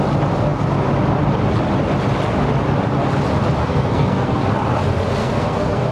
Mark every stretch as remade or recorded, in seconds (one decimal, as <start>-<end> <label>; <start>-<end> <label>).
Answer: 0.0-3.6 recorded; 3.6-4.4 remade; 4.4-5.2 recorded; 5.2-5.9 remade